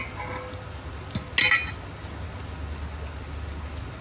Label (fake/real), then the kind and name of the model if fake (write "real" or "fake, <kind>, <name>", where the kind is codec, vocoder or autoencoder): real